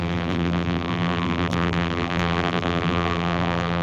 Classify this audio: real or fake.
fake